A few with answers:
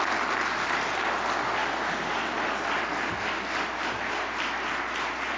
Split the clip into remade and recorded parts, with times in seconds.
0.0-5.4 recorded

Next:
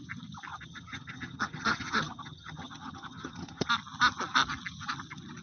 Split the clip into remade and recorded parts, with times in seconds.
0.0-0.5 recorded; 0.5-3.7 remade; 3.7-5.4 recorded

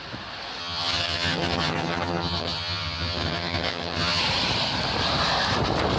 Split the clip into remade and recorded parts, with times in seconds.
0.0-0.6 recorded; 0.6-4.2 remade; 4.2-6.0 recorded

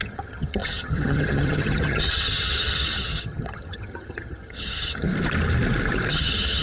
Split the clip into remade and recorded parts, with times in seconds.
0.0-5.1 remade; 5.1-6.1 recorded; 6.1-6.6 remade

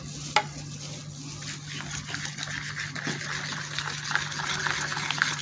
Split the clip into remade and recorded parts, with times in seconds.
0.0-5.4 recorded